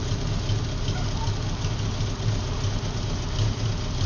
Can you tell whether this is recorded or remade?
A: recorded